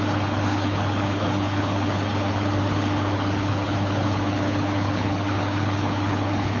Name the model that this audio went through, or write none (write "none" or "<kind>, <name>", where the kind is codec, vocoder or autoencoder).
codec, HILCodec